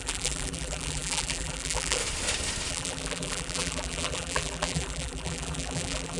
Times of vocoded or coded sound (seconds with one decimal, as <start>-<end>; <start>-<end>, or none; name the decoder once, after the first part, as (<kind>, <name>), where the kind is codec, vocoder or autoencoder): 0.0-2.0 (vocoder, BigVGAN v2); 2.7-6.2